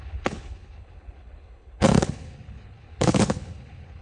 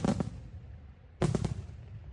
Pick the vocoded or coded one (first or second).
first